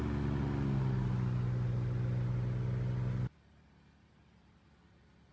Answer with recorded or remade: recorded